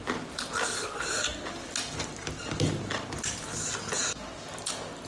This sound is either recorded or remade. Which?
recorded